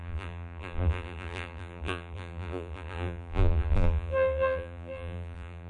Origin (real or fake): fake